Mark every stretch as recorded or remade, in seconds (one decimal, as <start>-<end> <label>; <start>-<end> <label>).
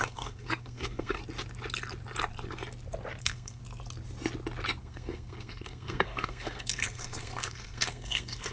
0.0-1.2 remade; 1.2-3.2 recorded; 3.2-3.6 remade; 3.6-4.8 recorded; 4.8-8.5 remade